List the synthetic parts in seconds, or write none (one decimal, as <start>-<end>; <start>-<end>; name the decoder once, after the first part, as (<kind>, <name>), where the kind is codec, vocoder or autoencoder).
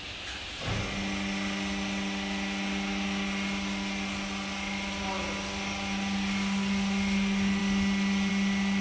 none